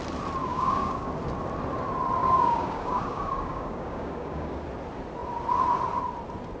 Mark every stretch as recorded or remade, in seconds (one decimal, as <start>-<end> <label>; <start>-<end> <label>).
0.0-0.4 recorded; 0.4-1.1 remade; 1.1-2.2 recorded; 2.2-4.6 remade; 4.6-6.6 recorded